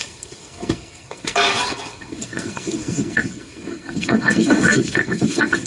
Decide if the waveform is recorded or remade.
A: remade